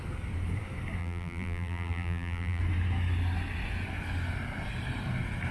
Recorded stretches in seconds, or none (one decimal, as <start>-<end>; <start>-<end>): 0.0-1.0; 2.6-5.5